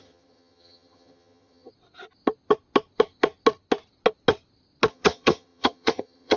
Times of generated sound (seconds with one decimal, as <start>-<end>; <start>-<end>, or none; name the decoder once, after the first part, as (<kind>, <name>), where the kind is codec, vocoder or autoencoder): 0.0-1.7 (vocoder, HiFi-GAN); 4.9-6.4